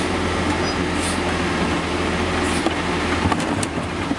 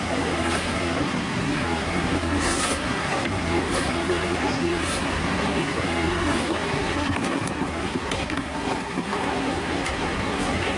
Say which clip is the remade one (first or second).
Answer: second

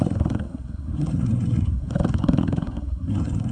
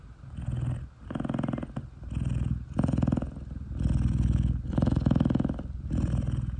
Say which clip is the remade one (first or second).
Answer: first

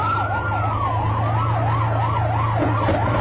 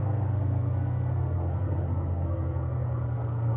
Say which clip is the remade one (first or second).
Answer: second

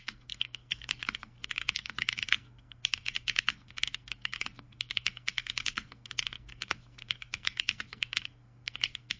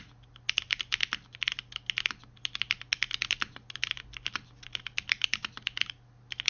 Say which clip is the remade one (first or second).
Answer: first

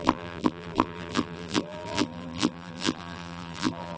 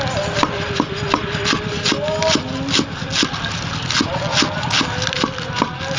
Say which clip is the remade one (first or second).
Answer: first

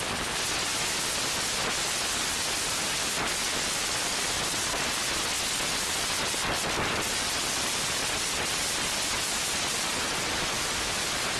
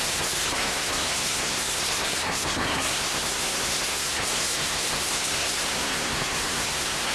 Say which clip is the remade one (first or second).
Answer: second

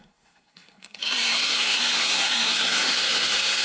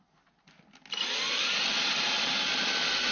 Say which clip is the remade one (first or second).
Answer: first